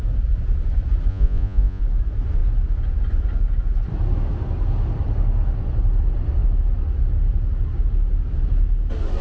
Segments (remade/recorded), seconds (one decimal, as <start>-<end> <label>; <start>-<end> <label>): 0.0-1.1 recorded; 1.1-1.8 remade; 1.8-9.2 recorded